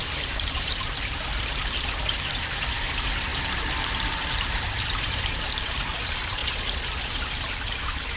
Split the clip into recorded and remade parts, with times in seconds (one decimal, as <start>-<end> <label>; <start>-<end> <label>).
0.0-6.4 remade; 6.4-7.0 recorded; 7.0-8.2 remade